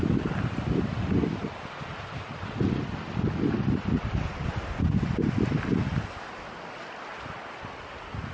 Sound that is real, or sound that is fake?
real